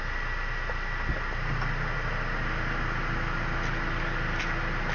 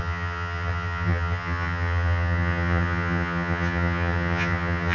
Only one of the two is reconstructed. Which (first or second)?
second